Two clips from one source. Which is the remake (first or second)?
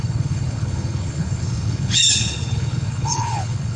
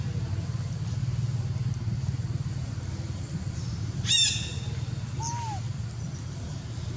first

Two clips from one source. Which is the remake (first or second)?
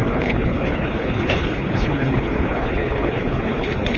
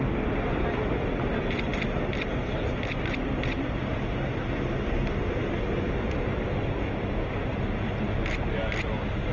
first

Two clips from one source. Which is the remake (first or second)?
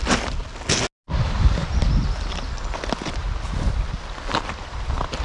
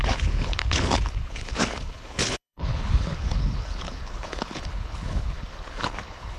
second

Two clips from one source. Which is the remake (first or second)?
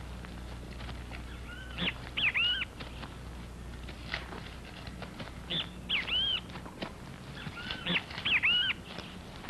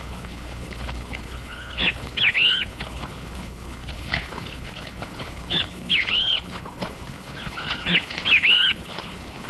second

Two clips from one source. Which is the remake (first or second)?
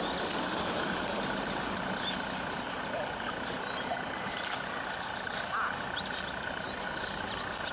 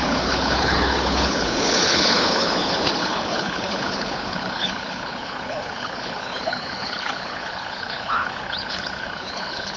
second